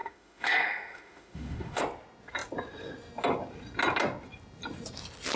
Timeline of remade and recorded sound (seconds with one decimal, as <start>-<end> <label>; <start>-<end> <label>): 0.0-1.8 remade; 1.8-5.4 recorded